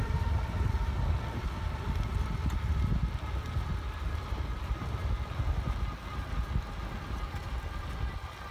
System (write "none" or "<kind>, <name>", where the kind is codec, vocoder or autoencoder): none